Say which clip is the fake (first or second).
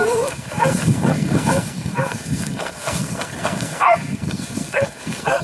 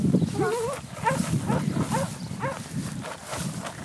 first